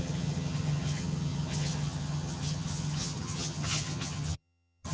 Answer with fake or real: fake